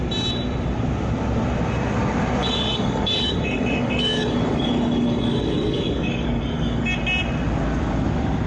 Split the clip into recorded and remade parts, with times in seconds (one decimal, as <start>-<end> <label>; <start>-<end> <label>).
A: 0.0-2.4 recorded; 2.4-6.9 remade; 6.9-8.5 recorded